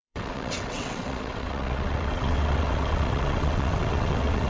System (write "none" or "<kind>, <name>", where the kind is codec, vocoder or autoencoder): vocoder, WaveNeXt